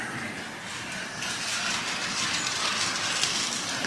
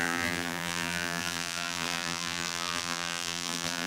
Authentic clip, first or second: first